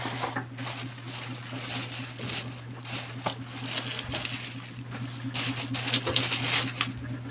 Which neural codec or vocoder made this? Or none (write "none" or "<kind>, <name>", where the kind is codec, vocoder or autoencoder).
none